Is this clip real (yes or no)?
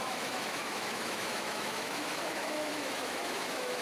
no